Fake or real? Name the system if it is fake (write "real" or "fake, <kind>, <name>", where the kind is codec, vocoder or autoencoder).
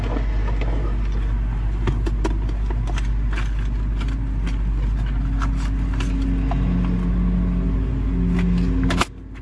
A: real